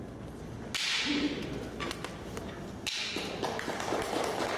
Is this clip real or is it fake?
real